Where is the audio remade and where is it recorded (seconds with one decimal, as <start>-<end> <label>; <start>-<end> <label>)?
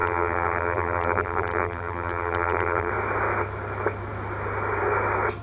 0.0-2.9 remade; 2.9-5.4 recorded